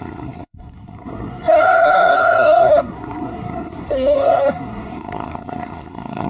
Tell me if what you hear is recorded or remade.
remade